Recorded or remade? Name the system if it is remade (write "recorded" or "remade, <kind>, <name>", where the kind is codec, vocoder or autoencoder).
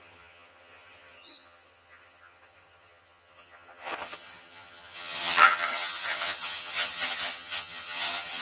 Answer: remade, vocoder, HiFi-GAN